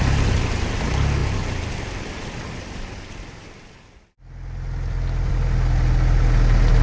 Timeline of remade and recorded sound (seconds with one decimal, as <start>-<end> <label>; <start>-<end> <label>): 0.0-6.8 recorded